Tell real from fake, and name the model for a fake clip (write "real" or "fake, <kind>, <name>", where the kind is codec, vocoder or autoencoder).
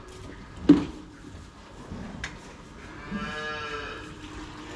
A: real